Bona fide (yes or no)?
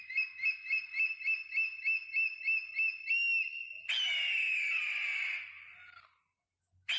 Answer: yes